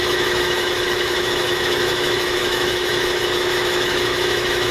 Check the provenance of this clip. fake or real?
fake